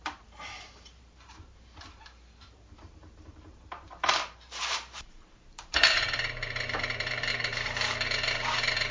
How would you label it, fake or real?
fake